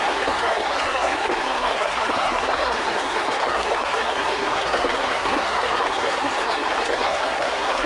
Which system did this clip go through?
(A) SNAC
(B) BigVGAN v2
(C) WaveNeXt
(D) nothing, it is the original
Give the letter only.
A